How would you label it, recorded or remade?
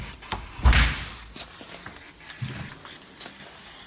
recorded